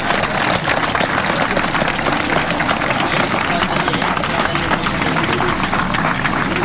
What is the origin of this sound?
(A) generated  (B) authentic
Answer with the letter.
B